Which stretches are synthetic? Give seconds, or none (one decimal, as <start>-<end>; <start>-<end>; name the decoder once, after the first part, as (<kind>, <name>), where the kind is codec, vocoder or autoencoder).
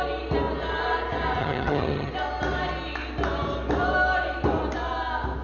1.4-2.1 (vocoder, HiFi-GAN)